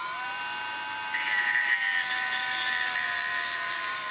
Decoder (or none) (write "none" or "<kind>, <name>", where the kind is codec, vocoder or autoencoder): vocoder, BigVGAN v2